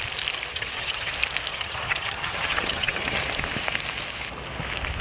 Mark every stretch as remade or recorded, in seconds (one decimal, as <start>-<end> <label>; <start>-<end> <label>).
0.0-0.5 recorded; 0.5-1.1 remade; 1.1-1.5 recorded; 1.5-3.2 remade; 3.2-5.0 recorded